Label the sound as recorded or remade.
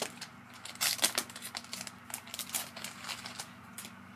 recorded